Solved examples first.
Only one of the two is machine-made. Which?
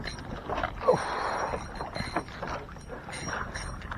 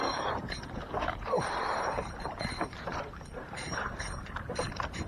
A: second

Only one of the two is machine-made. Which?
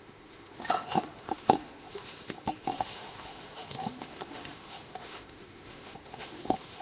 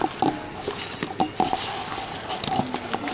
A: first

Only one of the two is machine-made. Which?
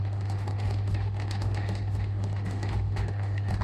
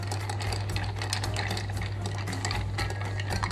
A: first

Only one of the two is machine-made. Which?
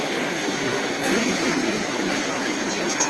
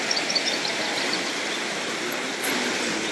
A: first